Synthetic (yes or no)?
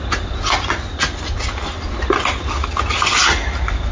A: no